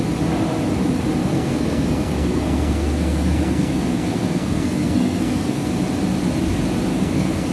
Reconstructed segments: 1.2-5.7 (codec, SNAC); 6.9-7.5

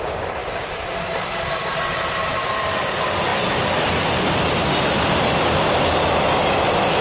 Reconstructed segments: none

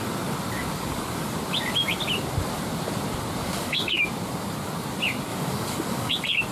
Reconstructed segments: 3.4-4.0 (codec, DAC); 5.3-6.1

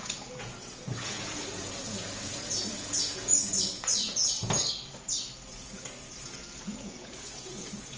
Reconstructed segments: 0.0-4.6 (vocoder, Vocos); 5.5-8.0

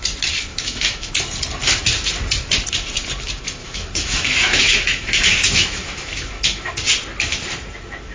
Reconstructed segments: 0.5-1.1 (autoencoder, DAC-VAE); 3.6-6.7

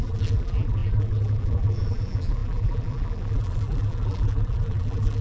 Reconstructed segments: 0.0-5.2 (vocoder, BigVGAN v2)

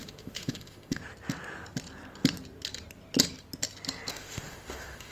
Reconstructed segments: 0.0-1.0 (autoencoder, DAC-VAE); 4.1-5.1

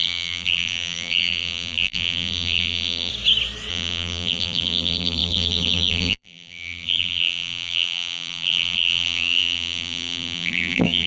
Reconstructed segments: 0.0-3.1 (vocoder, BigVGAN v2); 3.7-11.1